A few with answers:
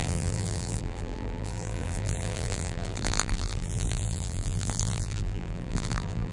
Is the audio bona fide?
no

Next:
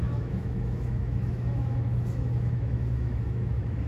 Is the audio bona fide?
no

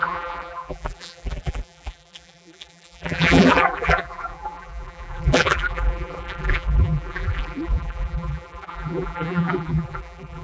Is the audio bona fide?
no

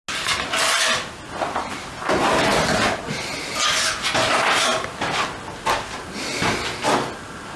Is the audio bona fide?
yes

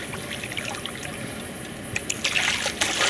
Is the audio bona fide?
yes